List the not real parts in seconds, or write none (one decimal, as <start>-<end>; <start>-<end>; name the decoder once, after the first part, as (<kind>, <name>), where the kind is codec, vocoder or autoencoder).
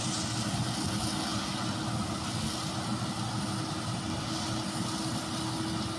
none